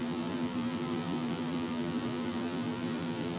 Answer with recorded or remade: remade